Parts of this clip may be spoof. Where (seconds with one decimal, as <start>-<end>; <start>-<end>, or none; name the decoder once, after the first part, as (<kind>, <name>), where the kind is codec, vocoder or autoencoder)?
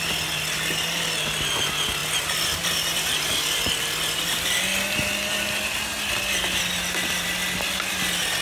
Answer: none